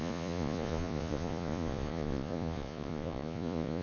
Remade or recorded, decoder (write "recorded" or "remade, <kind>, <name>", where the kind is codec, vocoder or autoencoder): remade, vocoder, Vocos